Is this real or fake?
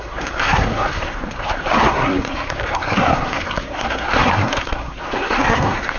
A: fake